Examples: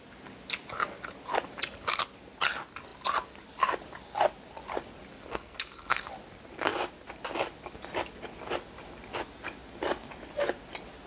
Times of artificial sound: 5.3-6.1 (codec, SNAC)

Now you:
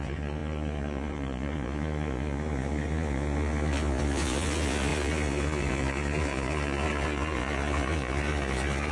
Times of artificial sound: 0.0-8.9 (vocoder, Vocos)

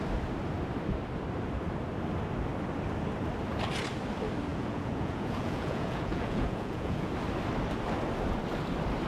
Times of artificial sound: 4.5-7.1 (vocoder, Vocos)